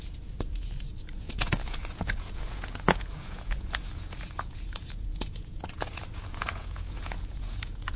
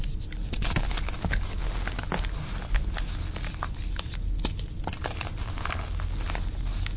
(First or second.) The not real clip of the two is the first